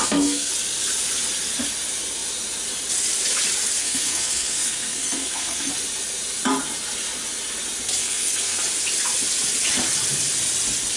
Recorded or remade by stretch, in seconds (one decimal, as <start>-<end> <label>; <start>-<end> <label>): 0.0-0.5 remade; 0.5-3.8 recorded; 3.8-5.7 remade; 5.7-8.0 recorded; 8.0-8.6 remade; 8.6-11.0 recorded